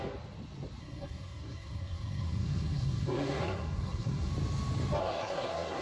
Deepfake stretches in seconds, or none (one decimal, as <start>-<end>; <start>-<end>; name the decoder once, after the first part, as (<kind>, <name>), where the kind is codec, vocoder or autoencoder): 0.8-4.3 (codec, SNAC); 5.0-5.8